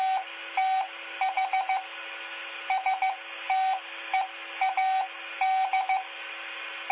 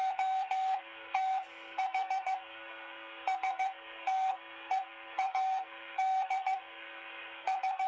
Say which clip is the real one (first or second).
first